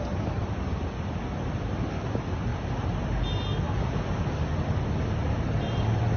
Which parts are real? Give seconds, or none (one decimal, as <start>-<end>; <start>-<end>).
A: 0.0-6.2